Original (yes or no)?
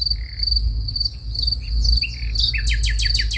yes